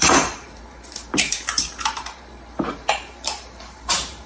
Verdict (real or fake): fake